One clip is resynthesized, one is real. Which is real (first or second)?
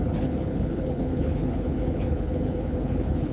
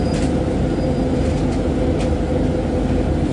second